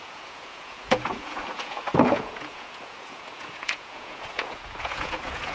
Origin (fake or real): fake